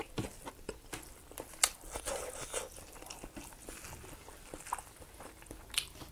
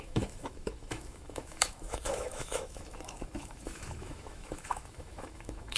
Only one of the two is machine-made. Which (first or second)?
second